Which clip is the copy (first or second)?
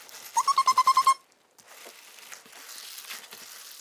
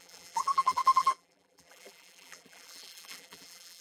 second